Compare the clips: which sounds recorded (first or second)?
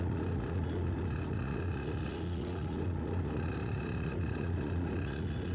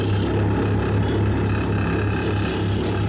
second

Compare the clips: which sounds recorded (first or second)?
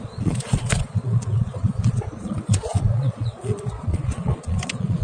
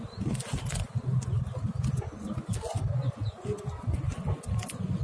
second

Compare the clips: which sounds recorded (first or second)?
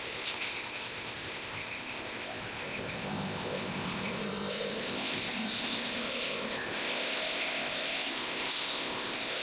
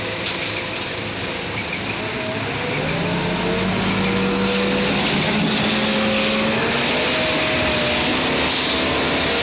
second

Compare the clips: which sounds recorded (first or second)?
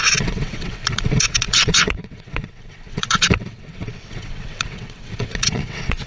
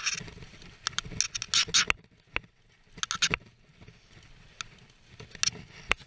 second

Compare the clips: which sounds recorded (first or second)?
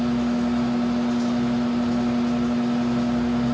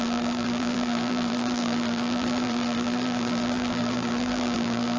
first